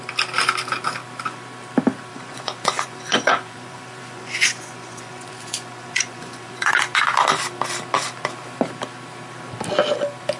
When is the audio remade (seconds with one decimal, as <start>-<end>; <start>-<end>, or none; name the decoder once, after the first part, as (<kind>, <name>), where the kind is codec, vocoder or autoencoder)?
2.1-6.7 (vocoder, Vocos)